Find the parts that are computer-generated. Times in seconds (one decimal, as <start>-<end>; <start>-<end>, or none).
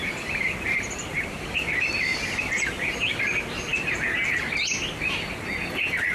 0.0-3.7; 5.6-6.1